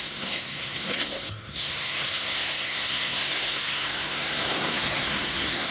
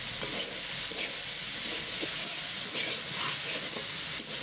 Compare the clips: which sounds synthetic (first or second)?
first